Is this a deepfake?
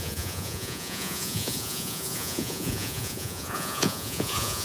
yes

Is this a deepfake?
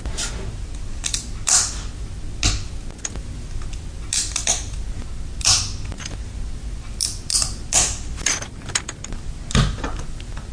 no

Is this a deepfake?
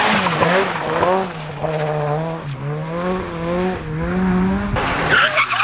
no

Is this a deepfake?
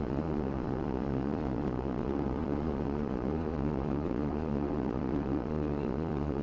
yes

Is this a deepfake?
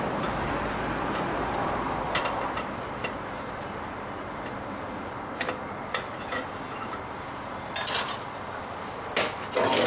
no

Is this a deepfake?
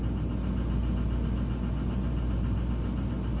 no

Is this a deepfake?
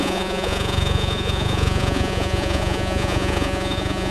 yes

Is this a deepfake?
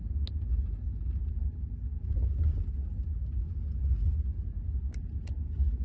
no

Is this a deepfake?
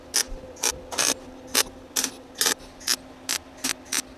no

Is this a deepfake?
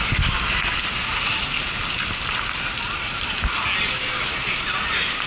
no